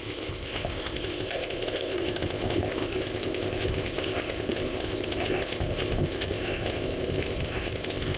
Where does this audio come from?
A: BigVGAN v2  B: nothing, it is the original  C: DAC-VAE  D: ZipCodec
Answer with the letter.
D